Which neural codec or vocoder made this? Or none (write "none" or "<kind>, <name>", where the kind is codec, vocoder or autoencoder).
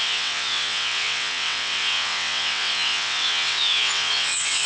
vocoder, WaveNeXt